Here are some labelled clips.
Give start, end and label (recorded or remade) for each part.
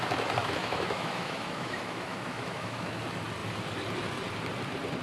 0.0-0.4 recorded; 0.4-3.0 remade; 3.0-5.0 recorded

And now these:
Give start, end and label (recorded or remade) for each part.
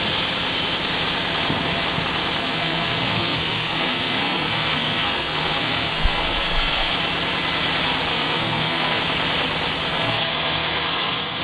0.0-2.4 recorded; 2.4-6.9 remade; 6.9-8.1 recorded; 8.1-9.0 remade; 9.0-9.9 recorded; 9.9-11.4 remade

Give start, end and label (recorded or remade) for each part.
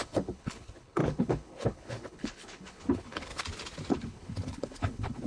0.0-3.3 remade; 3.3-3.9 recorded; 3.9-5.3 remade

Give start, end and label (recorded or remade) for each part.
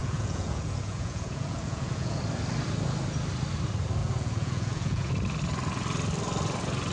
0.0-2.2 remade; 2.2-4.0 recorded; 4.0-5.1 remade; 5.1-6.9 recorded